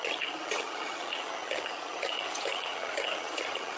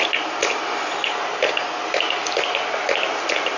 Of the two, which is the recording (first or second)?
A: second